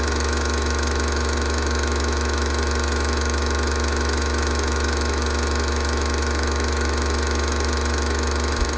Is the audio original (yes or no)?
no